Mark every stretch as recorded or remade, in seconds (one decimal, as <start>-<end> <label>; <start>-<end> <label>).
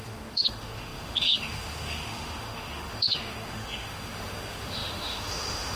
0.0-5.8 remade